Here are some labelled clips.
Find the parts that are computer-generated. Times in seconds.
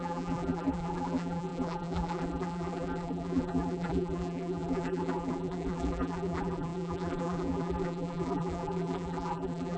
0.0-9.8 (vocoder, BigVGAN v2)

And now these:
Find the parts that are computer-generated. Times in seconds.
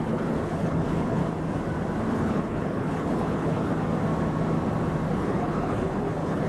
0.0-1.2 (codec, HILCodec); 2.1-3.7; 5.2-6.5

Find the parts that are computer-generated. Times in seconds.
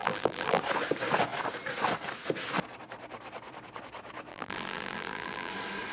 0.0-0.6 (vocoder, BigVGAN v2); 4.3-5.5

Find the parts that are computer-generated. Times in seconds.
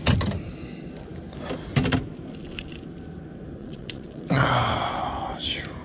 3.6-4.5 (vocoder, WaveNeXt)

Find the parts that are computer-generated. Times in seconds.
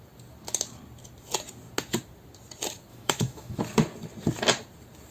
2.9-3.6 (autoencoder, DAC-VAE)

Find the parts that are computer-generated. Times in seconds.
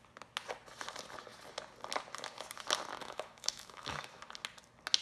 3.0-4.2 (autoencoder, DAC-VAE)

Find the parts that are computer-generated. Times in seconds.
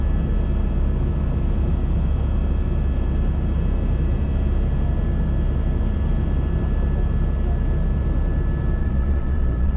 8.8-9.8 (vocoder, Vocos)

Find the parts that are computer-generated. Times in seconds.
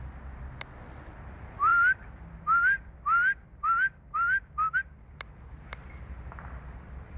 none